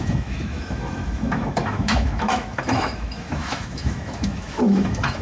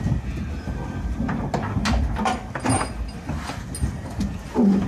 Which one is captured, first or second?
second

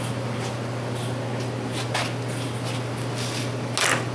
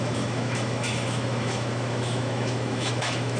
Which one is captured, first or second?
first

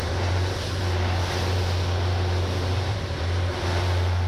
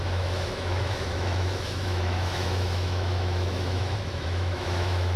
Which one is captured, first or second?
first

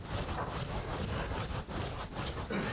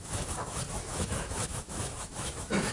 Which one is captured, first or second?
first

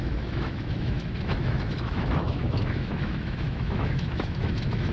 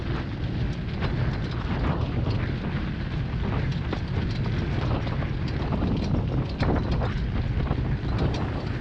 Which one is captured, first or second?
second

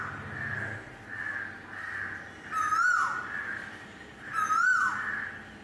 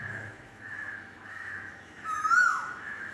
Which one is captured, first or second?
first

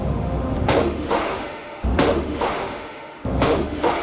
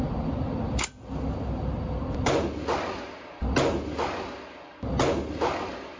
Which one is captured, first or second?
second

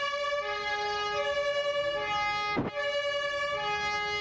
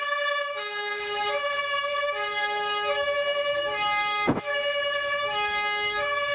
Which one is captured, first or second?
first